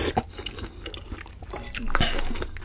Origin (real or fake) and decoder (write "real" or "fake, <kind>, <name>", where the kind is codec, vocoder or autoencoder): real